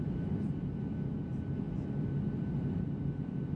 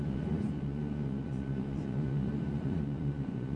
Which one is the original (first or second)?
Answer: first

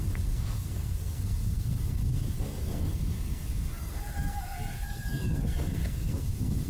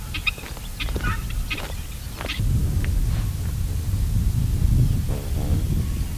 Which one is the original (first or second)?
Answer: second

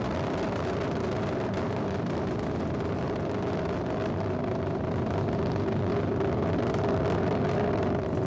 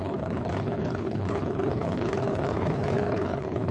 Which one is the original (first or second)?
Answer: first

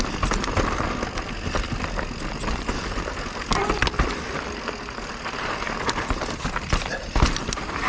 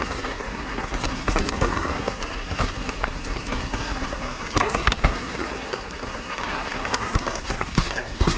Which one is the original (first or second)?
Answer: first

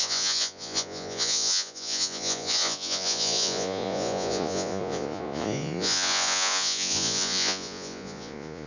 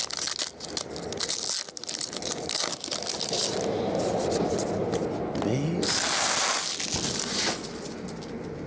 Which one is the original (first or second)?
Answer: second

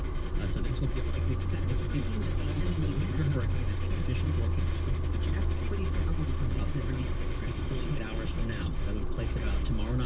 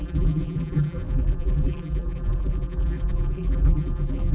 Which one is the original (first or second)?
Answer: first